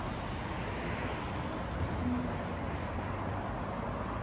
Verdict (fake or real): real